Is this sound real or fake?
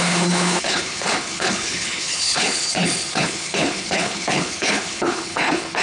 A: fake